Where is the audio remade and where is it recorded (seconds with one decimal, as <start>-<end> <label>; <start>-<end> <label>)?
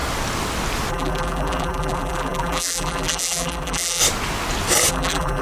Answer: 0.0-0.9 recorded; 0.9-4.0 remade; 4.0-4.9 recorded; 4.9-5.4 remade